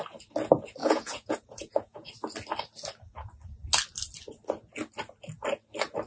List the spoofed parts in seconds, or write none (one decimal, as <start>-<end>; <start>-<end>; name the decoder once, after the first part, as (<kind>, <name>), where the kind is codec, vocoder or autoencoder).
0.8-2.1 (vocoder, Vocos)